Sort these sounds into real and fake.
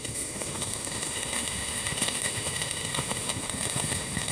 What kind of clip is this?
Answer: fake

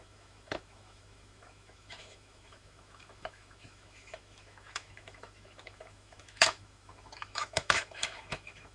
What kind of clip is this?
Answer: fake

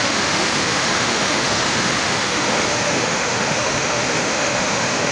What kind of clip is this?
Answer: fake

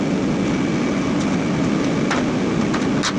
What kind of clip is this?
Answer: real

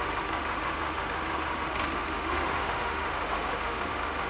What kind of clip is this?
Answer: fake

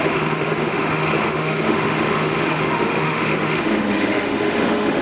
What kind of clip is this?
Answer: fake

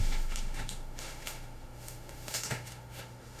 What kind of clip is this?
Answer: fake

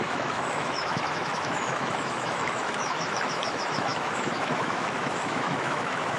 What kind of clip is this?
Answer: fake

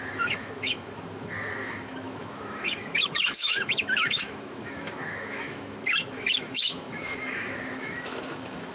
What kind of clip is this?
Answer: fake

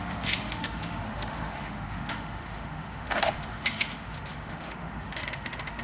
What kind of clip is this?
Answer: fake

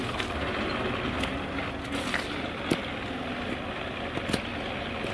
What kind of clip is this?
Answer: real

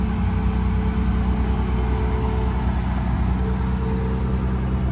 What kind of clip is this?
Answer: real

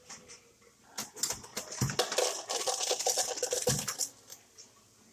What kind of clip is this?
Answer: real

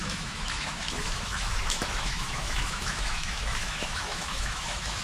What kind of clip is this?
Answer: fake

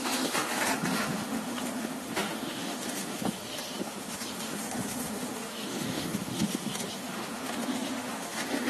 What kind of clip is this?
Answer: fake